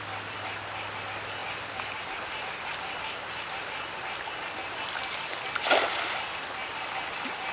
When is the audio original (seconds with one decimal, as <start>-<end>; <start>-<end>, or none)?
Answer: 0.0-7.5